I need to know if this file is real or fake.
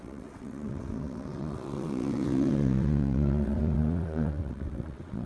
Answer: fake